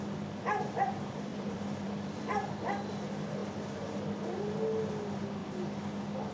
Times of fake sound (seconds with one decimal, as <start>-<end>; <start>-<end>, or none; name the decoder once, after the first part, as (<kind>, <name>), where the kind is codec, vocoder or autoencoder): 1.3-2.5 (vocoder, BigVGAN v2)